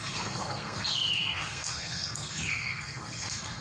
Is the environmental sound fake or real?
fake